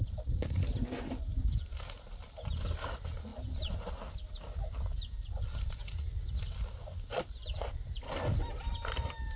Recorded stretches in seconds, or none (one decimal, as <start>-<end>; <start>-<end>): 0.0-5.8; 6.3-9.4